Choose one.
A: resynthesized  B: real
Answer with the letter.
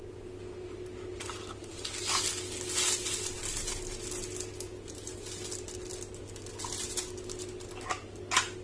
B